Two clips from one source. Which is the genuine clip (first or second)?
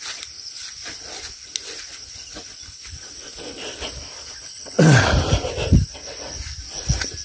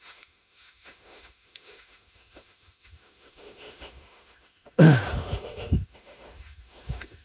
first